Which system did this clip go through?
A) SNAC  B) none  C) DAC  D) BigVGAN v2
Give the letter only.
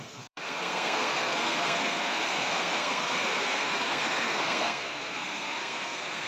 A